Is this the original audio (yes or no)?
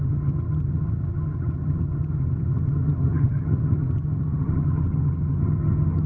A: no